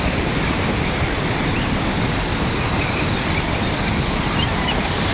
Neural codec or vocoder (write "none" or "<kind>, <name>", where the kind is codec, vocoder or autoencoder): none